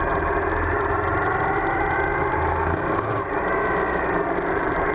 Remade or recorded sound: recorded